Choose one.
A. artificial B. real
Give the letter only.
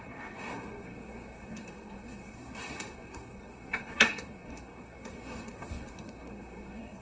A